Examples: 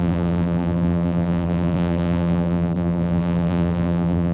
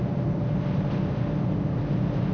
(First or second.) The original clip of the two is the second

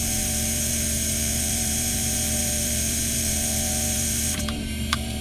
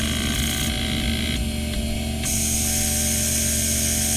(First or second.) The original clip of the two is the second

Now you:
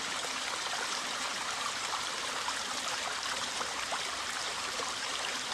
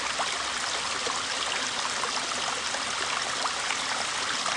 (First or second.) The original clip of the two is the second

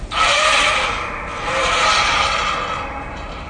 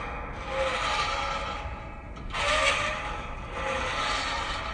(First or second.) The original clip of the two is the second